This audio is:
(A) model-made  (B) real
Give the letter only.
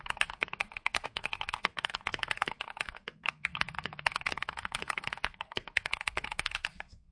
A